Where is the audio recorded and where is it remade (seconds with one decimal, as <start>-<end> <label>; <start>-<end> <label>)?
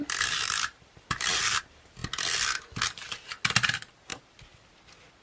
0.0-1.6 remade; 1.6-4.1 recorded; 4.1-4.7 remade; 4.7-5.2 recorded